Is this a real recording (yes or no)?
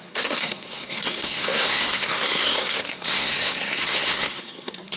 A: no